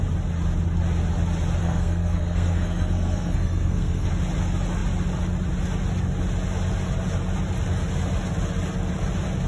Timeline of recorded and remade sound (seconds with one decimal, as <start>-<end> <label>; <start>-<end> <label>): 0.0-1.6 recorded; 1.6-4.1 remade; 4.1-9.5 recorded